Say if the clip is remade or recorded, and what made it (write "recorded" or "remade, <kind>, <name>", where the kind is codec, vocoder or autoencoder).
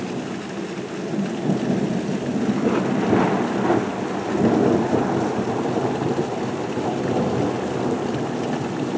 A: recorded